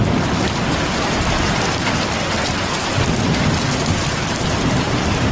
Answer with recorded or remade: remade